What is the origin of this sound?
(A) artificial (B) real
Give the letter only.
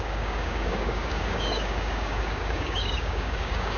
A